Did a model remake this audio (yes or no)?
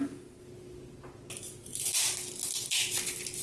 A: no